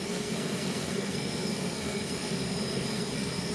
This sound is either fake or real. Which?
fake